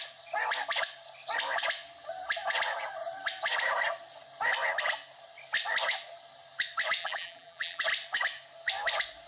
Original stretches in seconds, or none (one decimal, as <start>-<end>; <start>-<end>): 0.0-7.0; 7.8-9.3